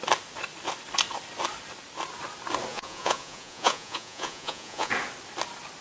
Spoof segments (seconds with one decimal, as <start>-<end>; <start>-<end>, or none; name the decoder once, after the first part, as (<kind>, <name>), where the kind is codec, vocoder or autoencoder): 2.7-4.9 (vocoder, Vocos)